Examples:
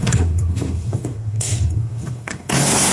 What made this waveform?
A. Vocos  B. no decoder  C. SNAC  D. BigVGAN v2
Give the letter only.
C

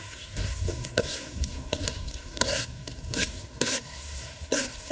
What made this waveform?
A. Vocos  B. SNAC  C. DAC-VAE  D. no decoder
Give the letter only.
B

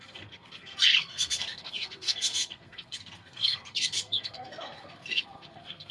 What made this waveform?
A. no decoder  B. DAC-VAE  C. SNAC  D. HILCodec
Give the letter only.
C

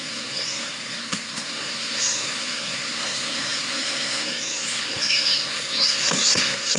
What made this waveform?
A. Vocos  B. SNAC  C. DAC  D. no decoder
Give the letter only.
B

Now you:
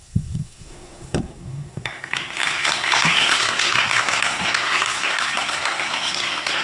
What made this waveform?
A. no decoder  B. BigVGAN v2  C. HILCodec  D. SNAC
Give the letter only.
D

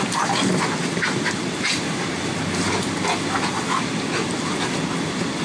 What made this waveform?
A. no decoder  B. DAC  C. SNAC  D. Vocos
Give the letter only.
A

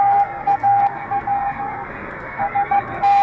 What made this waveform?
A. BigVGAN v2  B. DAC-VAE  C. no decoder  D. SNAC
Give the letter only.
D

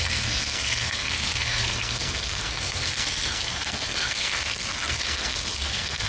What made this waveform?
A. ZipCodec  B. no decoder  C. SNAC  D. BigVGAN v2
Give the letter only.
C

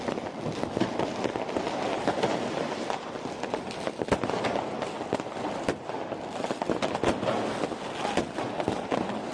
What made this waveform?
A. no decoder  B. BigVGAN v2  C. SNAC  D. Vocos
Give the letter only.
A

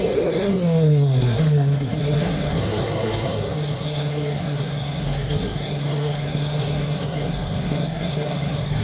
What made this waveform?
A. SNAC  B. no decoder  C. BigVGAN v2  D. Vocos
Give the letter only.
A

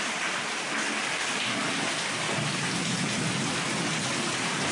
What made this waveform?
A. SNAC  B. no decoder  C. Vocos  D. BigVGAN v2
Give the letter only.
B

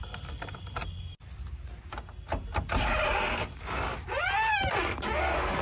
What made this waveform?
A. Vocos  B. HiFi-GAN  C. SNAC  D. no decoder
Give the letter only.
D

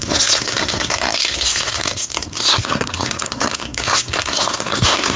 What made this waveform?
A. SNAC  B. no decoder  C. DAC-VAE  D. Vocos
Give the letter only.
A